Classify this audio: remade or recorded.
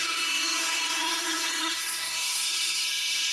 remade